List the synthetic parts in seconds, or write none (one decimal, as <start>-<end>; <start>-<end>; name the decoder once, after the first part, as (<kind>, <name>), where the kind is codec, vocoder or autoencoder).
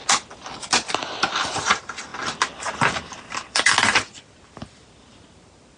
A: 2.1-5.8 (vocoder, BigVGAN v2)